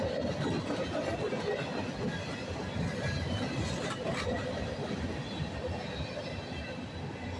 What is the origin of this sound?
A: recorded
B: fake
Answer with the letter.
A